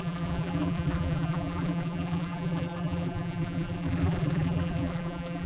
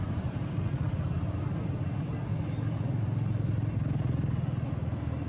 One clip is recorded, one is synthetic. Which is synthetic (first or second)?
first